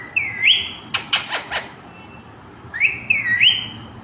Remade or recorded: recorded